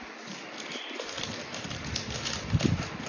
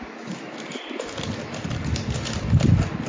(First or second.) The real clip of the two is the second